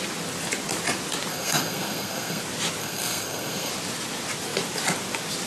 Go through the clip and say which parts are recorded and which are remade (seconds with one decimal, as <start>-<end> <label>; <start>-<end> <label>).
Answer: 0.0-1.3 recorded; 1.3-2.4 remade; 2.4-2.8 recorded; 2.8-3.7 remade; 3.7-5.5 recorded